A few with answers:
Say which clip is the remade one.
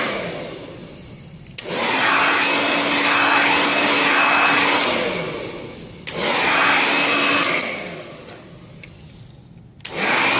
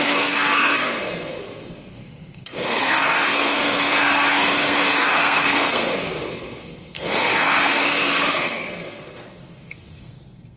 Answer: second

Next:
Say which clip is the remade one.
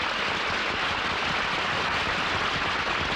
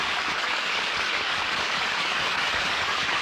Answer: second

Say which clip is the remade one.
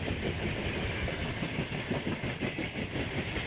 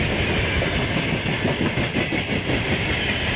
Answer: first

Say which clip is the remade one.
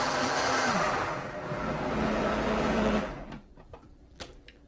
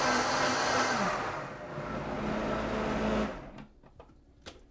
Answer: first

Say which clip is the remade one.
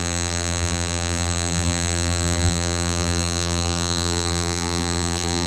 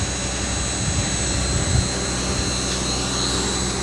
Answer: first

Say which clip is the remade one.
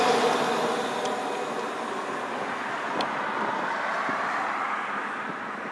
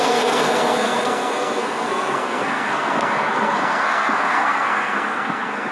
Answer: second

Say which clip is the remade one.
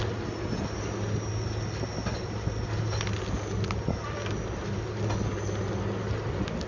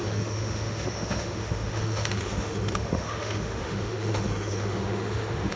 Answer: second